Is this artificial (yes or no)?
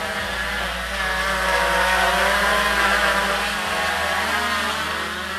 no